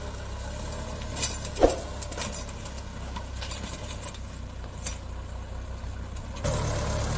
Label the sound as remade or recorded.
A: recorded